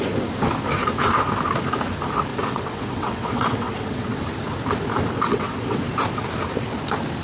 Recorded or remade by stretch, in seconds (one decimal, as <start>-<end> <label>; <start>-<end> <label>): 0.0-2.3 recorded; 2.3-4.2 remade; 4.2-5.3 recorded; 5.3-5.8 remade; 5.8-7.2 recorded